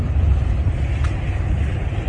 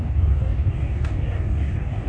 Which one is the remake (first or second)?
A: second